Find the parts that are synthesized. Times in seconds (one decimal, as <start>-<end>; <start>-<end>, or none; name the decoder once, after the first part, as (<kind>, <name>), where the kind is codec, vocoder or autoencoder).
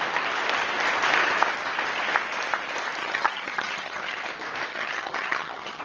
3.0-4.3 (vocoder, HiFi-GAN); 4.7-5.8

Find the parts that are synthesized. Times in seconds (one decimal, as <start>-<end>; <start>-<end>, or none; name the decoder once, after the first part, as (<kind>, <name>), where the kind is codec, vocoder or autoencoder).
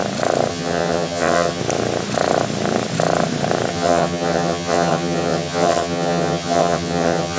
0.5-1.6 (vocoder, HiFi-GAN); 3.7-7.4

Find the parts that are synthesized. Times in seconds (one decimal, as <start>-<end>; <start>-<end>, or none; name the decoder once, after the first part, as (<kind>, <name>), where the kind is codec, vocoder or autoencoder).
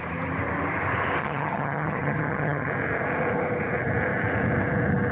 1.2-2.7 (vocoder, HiFi-GAN)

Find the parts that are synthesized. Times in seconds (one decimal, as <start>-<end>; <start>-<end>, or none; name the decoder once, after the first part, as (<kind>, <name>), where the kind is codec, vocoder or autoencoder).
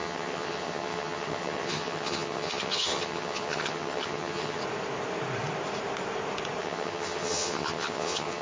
0.0-4.6 (vocoder, HiFi-GAN); 6.6-8.4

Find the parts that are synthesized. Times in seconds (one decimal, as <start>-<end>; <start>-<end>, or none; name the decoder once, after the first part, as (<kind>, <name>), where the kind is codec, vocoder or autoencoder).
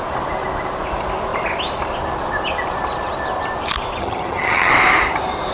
4.0-4.7 (vocoder, HiFi-GAN)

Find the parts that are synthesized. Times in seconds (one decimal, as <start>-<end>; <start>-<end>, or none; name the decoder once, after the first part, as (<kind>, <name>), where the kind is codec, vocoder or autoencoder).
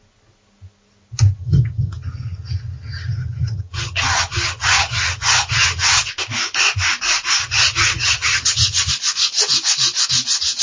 1.4-6.1 (vocoder, HiFi-GAN); 7.4-8.9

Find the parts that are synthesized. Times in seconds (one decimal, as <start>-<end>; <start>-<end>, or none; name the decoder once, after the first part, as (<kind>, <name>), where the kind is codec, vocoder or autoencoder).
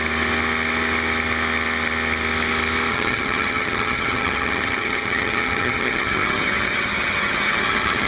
2.9-8.1 (vocoder, HiFi-GAN)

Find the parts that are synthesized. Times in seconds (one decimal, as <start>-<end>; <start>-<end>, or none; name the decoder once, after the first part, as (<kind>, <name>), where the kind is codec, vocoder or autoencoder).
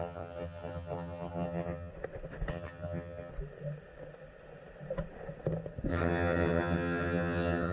0.0-1.9 (vocoder, HiFi-GAN); 2.5-3.3; 5.9-7.7